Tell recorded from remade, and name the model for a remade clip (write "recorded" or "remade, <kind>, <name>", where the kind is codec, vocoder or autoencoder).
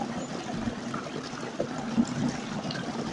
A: recorded